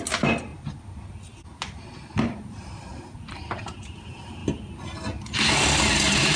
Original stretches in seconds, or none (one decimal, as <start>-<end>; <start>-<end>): 0.5-2.2; 4.4-5.8